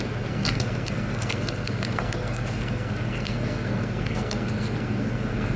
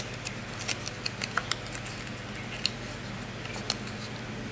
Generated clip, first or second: first